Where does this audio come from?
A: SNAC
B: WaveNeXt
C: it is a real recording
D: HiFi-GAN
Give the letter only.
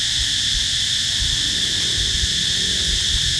C